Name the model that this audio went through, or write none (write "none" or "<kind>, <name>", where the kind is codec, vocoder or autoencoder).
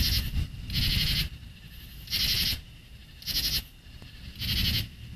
none